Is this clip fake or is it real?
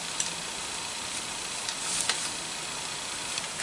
real